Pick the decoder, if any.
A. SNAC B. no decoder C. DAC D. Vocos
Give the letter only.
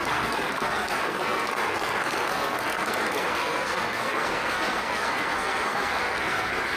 A